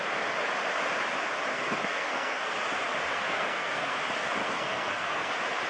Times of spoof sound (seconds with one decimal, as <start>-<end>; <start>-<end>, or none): 1.5-2.6; 3.1-4.0; 4.4-5.3